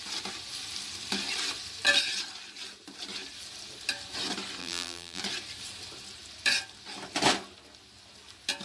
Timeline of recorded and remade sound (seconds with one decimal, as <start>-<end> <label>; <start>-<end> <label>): 0.0-4.6 recorded; 4.6-5.2 remade; 5.2-8.6 recorded